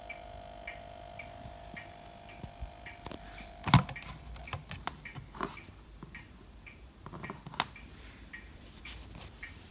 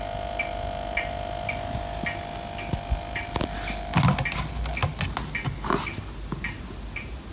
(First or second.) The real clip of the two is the second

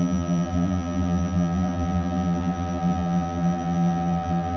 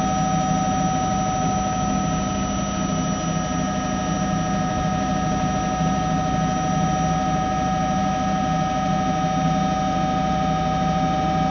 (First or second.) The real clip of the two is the second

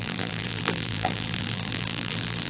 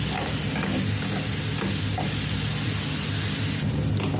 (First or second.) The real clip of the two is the second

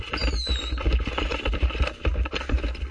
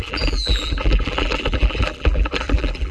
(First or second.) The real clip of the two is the first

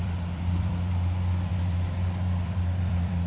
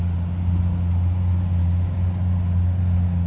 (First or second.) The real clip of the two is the second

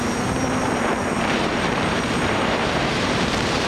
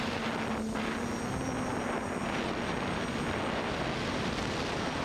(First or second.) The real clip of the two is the second